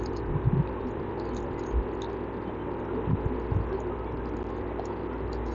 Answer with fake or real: real